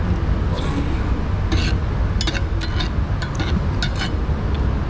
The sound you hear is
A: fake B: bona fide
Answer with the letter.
B